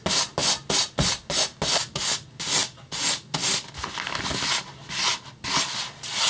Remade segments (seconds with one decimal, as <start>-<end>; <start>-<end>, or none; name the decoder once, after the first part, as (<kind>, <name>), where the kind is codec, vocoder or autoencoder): none

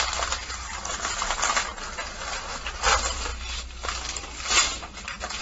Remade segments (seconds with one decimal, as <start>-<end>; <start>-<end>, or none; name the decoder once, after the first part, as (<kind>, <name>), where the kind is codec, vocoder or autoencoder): none

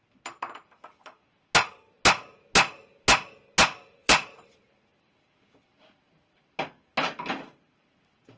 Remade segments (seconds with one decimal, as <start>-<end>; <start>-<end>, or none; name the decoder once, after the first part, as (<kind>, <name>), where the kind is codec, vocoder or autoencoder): 4.0-4.9 (vocoder, BigVGAN v2)

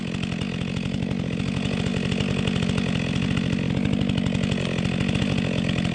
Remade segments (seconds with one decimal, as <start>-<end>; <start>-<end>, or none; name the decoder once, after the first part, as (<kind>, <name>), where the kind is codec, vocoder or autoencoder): none

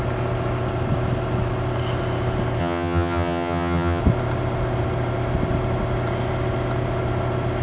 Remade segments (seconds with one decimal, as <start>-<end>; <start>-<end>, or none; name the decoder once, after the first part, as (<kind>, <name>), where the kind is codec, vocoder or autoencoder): 2.6-4.0 (vocoder, HiFi-GAN)

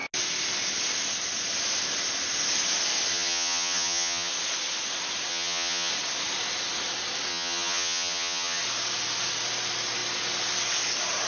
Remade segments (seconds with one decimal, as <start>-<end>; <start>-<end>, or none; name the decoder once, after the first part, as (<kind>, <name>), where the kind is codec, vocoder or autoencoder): 3.1-4.3 (vocoder, HiFi-GAN); 5.3-5.9; 7.3-8.6